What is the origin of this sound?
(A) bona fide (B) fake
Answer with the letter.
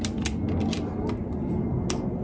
A